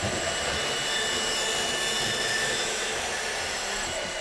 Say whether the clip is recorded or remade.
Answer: recorded